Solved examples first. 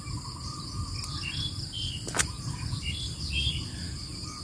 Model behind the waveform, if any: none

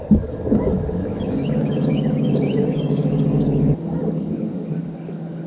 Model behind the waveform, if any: codec, DAC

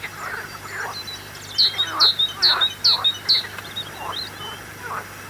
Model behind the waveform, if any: none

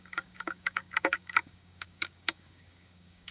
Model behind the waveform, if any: codec, DAC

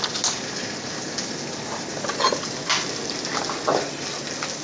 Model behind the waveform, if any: none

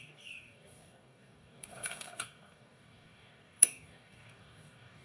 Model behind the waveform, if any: codec, DAC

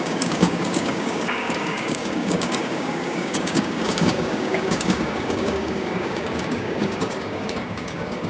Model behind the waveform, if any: codec, DAC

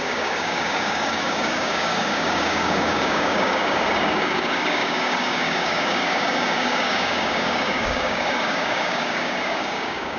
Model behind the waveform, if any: codec, DAC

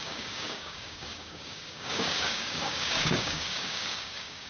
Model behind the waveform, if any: codec, DAC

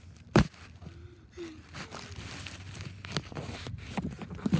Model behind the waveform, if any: none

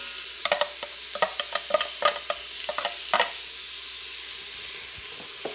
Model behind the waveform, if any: none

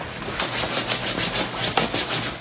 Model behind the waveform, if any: none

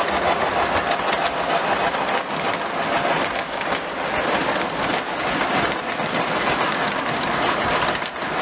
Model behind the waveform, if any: none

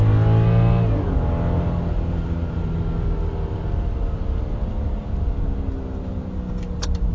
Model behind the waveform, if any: none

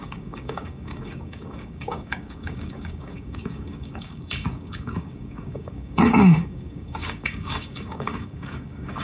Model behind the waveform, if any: codec, DAC